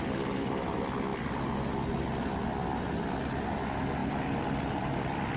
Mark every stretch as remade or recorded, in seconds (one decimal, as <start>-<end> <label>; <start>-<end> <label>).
0.0-4.0 recorded; 4.0-5.4 remade